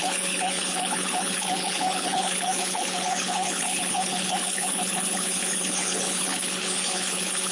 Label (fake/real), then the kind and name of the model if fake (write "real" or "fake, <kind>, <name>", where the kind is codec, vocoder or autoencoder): fake, codec, HILCodec